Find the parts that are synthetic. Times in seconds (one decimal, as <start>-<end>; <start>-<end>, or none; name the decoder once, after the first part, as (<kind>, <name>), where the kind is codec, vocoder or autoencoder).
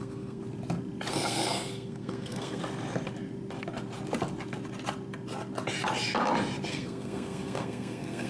0.0-0.4 (codec, SNAC); 1.1-2.6; 6.7-8.3